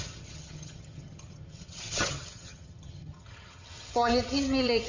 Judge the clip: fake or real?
fake